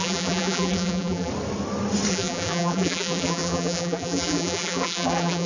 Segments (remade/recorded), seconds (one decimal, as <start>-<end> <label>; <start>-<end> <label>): 0.0-1.3 remade; 1.3-2.1 recorded; 2.1-5.5 remade